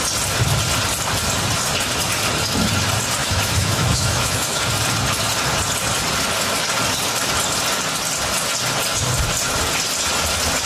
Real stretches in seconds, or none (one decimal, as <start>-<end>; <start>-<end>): 0.0-3.2; 4.6-10.7